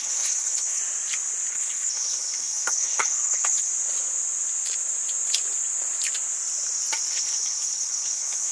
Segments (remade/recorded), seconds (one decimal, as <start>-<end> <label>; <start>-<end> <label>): 0.0-0.8 remade; 0.8-1.5 recorded; 1.5-3.7 remade; 3.7-7.1 recorded; 7.1-8.5 remade